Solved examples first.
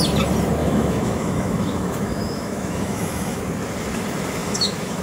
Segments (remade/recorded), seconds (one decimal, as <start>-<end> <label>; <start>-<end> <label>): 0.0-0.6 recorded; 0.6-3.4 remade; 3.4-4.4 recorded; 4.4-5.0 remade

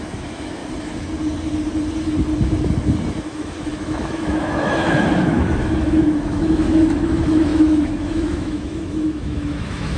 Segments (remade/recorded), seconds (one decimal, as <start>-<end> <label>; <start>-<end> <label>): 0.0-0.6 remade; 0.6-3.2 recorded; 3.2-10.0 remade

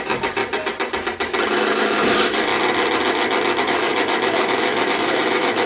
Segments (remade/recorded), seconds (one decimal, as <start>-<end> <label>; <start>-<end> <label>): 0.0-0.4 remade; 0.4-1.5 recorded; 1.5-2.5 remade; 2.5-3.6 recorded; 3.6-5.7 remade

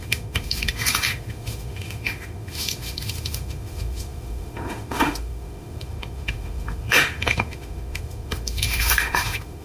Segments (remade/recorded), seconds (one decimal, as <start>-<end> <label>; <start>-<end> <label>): 0.0-9.6 remade

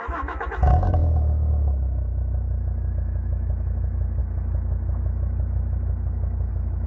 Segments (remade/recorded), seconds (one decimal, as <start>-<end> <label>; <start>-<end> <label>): 0.0-2.1 remade; 2.1-2.9 recorded; 2.9-6.9 remade

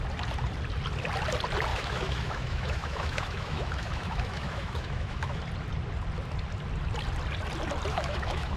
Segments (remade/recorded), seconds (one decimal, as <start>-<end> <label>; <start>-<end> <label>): 0.0-1.7 recorded; 1.7-5.4 remade; 5.4-7.9 recorded; 7.9-8.6 remade